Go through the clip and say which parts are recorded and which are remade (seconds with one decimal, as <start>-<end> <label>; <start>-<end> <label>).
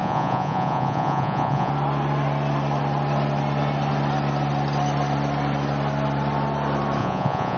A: 0.0-1.7 remade; 1.7-7.0 recorded; 7.0-7.6 remade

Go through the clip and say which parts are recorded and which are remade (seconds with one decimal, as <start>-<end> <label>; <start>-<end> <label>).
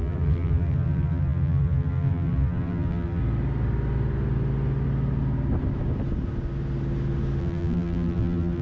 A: 0.0-3.2 remade; 3.2-7.4 recorded; 7.4-8.6 remade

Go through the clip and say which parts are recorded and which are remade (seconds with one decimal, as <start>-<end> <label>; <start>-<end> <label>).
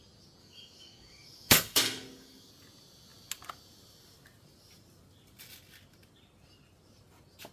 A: 0.0-0.4 recorded; 0.4-2.5 remade; 2.5-7.5 recorded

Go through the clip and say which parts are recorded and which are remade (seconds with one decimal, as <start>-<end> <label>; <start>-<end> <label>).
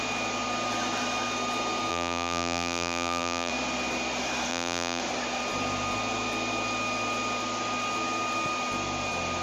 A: 0.0-1.9 recorded; 1.9-3.5 remade; 3.5-4.5 recorded; 4.5-5.0 remade; 5.0-9.4 recorded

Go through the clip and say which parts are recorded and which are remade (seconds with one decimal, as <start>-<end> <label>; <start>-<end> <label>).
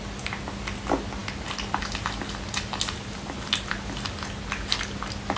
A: 0.0-5.4 recorded